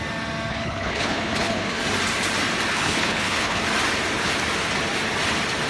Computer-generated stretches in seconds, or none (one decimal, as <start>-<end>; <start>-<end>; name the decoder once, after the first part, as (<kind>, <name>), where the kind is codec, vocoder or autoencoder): 0.5-1.8 (codec, HILCodec); 2.7-3.6